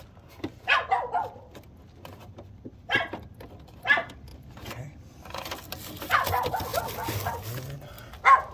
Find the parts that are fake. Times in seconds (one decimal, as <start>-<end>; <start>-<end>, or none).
4.3-5.7; 6.7-7.3